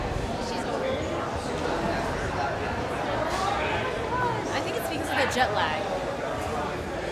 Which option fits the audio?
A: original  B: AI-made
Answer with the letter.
A